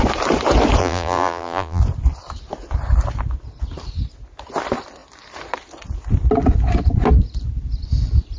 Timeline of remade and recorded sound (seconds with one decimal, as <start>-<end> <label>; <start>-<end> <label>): 0.0-0.8 recorded; 0.8-1.8 remade; 1.8-8.4 recorded